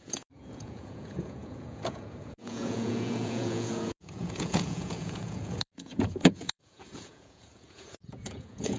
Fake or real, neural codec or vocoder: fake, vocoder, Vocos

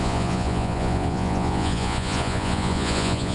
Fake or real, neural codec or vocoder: fake, vocoder, Vocos